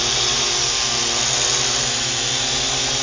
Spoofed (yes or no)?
no